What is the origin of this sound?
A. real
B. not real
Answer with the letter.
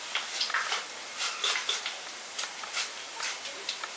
A